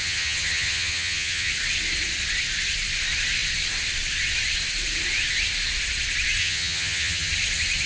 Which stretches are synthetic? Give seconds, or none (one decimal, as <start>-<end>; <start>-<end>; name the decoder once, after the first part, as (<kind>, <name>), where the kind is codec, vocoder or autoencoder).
0.0-1.5 (vocoder, HiFi-GAN); 6.4-7.3